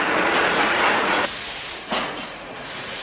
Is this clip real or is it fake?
fake